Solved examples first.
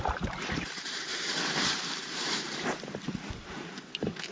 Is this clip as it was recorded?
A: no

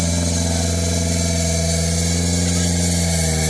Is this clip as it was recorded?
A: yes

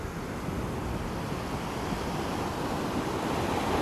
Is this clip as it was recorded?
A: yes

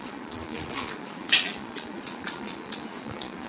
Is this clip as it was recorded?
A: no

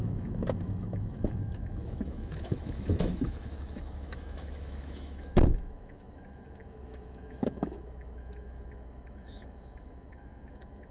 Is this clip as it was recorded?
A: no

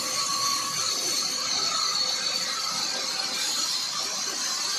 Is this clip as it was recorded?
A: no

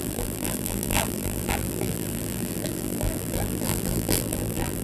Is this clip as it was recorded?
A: no